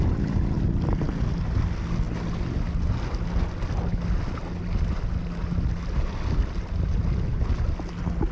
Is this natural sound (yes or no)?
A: yes